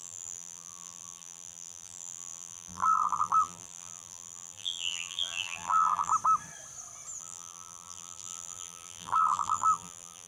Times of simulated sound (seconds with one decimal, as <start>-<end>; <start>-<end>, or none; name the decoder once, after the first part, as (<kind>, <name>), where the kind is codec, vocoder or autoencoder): 0.0-6.1 (vocoder, BigVGAN v2); 7.2-10.3